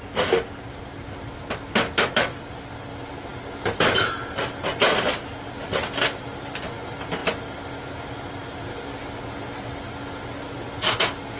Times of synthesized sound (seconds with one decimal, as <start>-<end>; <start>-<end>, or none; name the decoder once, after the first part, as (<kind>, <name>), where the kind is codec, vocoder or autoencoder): none